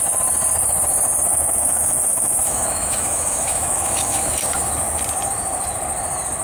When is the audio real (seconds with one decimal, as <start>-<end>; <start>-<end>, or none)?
0.0-1.3; 4.7-6.4